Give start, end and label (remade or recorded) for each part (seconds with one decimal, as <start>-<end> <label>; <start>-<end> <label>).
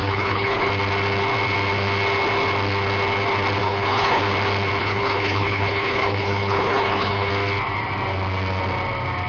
0.0-0.7 remade; 0.7-3.6 recorded; 3.6-4.2 remade; 4.2-4.8 recorded; 4.8-7.3 remade; 7.3-9.3 recorded